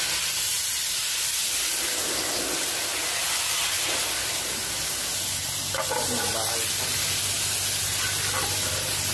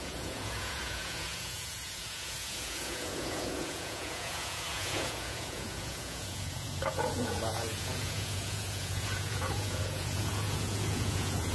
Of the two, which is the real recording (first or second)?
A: first